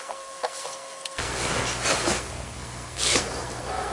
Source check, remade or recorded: remade